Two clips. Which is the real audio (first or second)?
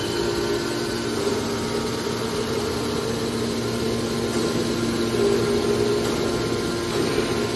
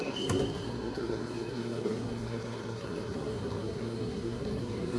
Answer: first